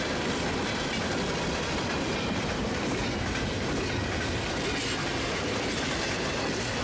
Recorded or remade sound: recorded